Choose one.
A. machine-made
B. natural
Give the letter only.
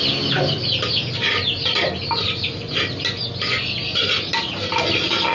B